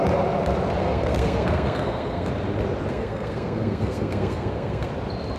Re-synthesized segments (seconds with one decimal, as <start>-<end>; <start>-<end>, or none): 0.8-2.3; 2.9-4.9